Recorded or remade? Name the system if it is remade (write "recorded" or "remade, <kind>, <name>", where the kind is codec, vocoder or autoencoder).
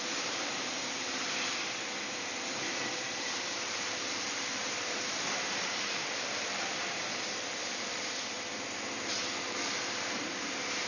remade, vocoder, BigVGAN v2